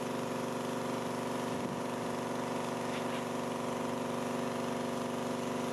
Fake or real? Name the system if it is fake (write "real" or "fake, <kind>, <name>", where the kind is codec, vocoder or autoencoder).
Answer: real